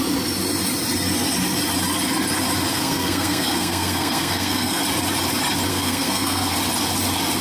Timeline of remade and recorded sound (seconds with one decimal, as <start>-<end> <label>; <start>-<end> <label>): 0.0-2.7 recorded; 2.7-4.8 remade; 4.8-5.7 recorded; 5.7-6.5 remade; 6.5-7.4 recorded